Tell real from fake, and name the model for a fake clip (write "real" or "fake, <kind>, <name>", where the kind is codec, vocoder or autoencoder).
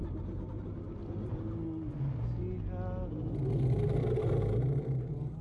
real